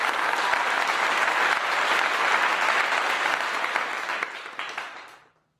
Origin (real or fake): real